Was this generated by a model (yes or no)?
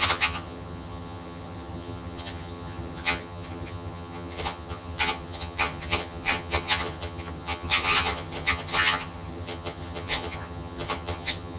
yes